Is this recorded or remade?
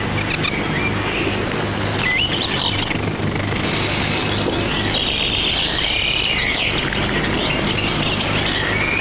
recorded